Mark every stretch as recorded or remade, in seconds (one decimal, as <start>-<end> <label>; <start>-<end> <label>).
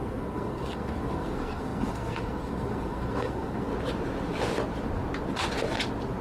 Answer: 0.0-3.7 remade; 3.7-6.2 recorded